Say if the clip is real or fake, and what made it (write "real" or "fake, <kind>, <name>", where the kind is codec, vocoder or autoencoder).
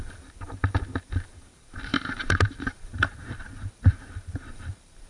fake, vocoder, BigVGAN v2